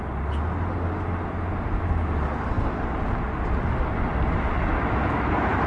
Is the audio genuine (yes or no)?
yes